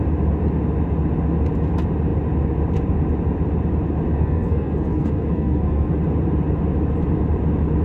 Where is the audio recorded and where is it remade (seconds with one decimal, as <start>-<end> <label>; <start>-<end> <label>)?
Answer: 0.0-4.1 recorded; 4.1-5.9 remade; 5.9-7.8 recorded